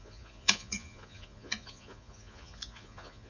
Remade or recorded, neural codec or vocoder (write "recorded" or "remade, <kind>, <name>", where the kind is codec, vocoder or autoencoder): remade, vocoder, Vocos